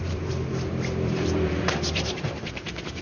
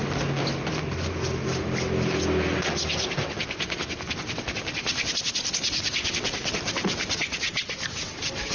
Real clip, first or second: second